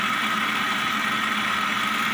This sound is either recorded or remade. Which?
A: recorded